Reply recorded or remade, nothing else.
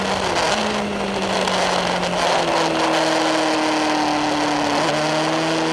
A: recorded